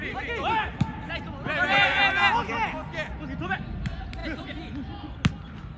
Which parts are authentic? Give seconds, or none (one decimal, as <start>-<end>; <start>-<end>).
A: 0.0-5.8